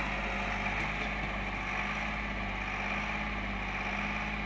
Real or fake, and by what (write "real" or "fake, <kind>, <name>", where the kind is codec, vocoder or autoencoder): real